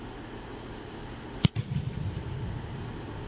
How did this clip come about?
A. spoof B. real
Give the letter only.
B